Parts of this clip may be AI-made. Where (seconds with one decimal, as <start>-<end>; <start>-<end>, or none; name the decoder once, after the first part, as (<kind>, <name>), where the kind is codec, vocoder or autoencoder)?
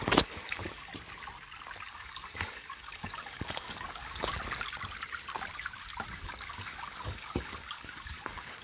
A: 0.0-0.9 (codec, DAC); 1.9-4.3; 6.1-8.6